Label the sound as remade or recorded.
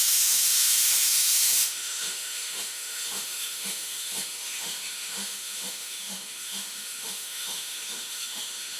remade